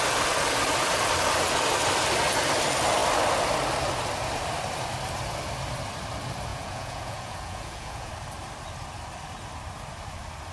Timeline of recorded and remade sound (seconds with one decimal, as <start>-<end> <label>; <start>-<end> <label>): 0.0-6.5 recorded; 6.5-8.1 remade; 8.1-10.5 recorded

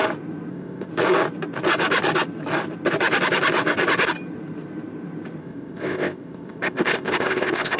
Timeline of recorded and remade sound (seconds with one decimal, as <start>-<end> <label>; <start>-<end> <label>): 0.0-0.5 recorded; 0.5-0.9 remade; 0.9-5.4 recorded; 5.4-7.8 remade

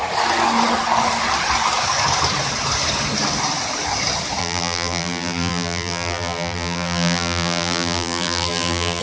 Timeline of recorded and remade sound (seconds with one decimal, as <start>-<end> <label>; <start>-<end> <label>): 0.0-4.4 recorded; 4.4-9.0 remade

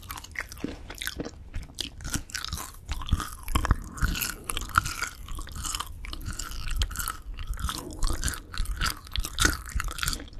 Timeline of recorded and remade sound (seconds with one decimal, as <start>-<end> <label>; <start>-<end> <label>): 0.0-10.4 recorded